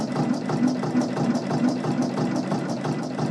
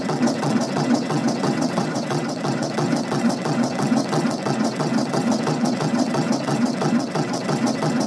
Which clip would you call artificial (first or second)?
second